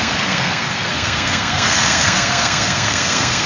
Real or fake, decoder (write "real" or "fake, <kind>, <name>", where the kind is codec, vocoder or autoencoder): fake, codec, SNAC